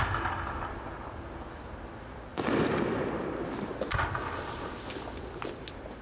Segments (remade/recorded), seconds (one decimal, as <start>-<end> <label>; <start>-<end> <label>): 0.0-6.0 recorded